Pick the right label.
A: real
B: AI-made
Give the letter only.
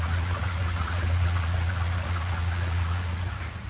B